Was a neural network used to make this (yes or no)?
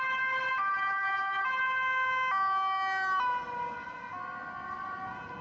no